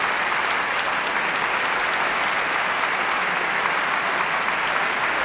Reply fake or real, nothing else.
real